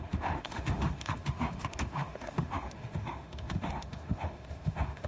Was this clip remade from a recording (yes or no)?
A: yes